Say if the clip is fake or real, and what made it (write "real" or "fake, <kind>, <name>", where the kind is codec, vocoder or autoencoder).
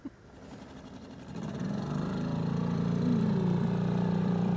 fake, vocoder, BigVGAN v2